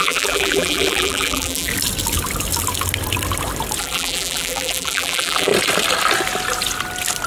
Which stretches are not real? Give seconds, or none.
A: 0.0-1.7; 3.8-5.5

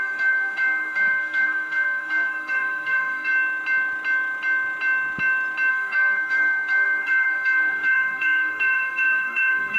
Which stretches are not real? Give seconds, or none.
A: 0.0-3.3; 5.7-9.8

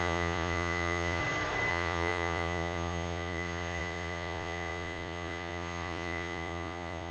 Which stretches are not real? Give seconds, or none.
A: 0.0-1.2; 1.7-7.1

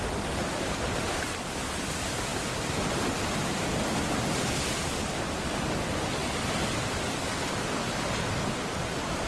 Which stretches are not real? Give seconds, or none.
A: none

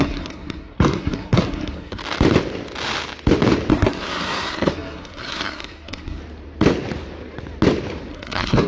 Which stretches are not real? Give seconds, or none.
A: 0.0-2.0; 3.7-6.2; 8.1-8.7

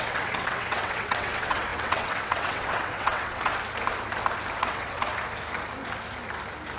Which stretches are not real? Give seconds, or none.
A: 0.0-3.5; 4.6-5.1

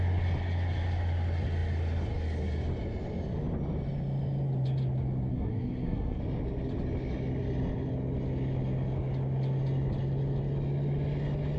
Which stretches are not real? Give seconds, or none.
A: 5.3-6.2

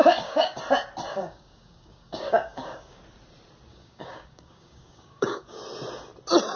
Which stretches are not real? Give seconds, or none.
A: 0.0-0.6; 1.1-3.0; 3.7-5.6